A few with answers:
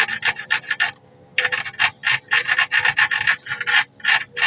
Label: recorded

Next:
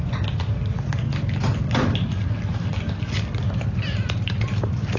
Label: recorded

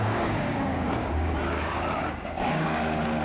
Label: remade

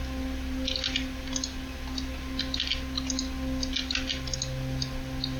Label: recorded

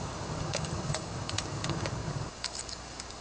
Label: remade